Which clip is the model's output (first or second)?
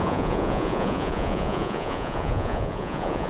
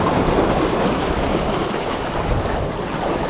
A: first